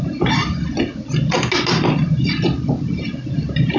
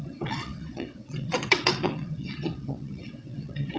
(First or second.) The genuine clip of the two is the first